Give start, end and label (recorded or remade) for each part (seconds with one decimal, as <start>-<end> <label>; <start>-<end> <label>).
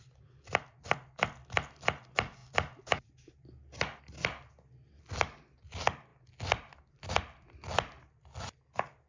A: 0.0-9.1 recorded